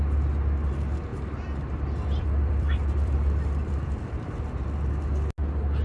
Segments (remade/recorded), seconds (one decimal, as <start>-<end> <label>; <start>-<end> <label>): 0.0-1.1 recorded; 1.1-4.6 remade; 4.6-5.8 recorded